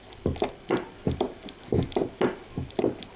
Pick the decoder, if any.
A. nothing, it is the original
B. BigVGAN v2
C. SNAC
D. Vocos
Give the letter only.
A